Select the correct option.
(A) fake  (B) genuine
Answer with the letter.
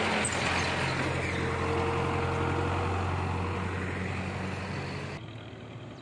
B